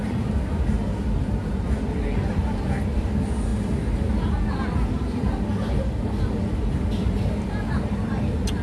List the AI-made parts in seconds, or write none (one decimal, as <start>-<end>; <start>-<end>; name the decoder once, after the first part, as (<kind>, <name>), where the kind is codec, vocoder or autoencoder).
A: none